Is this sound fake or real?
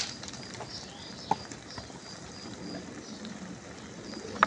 fake